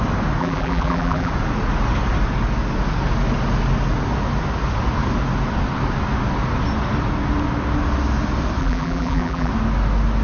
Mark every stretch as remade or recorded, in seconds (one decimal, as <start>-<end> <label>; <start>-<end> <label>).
0.0-0.4 recorded; 0.4-1.3 remade; 1.3-8.6 recorded; 8.6-9.5 remade; 9.5-10.2 recorded